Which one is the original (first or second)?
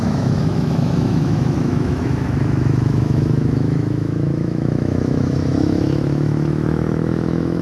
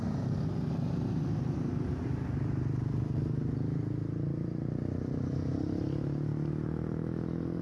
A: second